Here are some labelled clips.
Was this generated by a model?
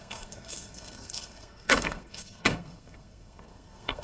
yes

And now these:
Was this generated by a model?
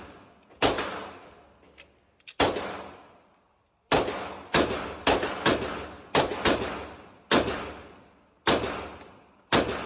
no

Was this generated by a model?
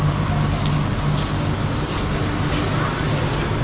no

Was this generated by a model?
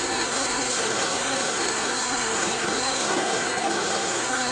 yes